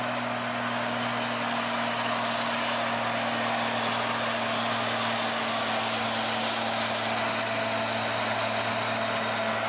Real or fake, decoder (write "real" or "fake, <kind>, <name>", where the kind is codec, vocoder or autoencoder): real